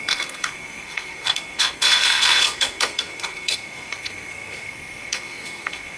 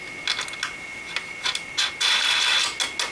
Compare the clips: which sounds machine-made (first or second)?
first